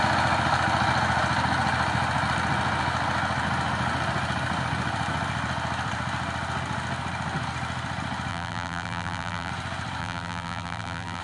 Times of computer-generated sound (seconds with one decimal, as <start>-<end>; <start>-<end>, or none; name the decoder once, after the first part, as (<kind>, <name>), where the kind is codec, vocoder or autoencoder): 8.3-9.5 (vocoder, BigVGAN v2); 10.0-11.2